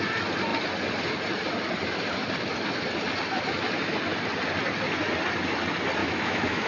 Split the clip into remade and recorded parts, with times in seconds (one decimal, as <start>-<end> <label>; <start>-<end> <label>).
0.0-6.0 recorded; 6.0-6.7 remade